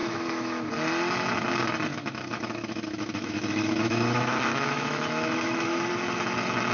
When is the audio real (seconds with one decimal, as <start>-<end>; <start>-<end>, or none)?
0.7-1.9; 5.9-6.7